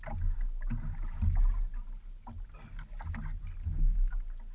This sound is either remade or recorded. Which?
recorded